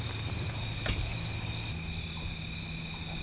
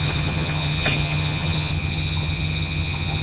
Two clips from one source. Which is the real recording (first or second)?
first